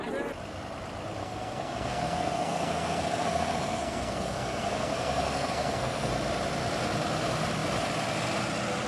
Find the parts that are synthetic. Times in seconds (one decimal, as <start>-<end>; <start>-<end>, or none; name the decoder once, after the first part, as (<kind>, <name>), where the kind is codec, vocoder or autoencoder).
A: 1.2-6.1 (codec, SNAC)